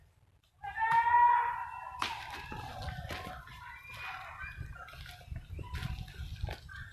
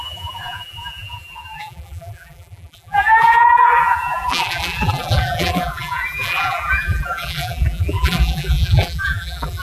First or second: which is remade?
second